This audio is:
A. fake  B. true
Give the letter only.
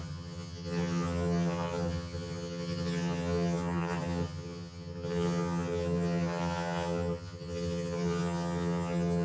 A